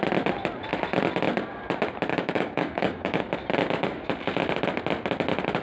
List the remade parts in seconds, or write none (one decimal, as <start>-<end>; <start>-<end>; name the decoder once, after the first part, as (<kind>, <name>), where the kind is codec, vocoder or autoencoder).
2.1-3.2 (codec, DAC)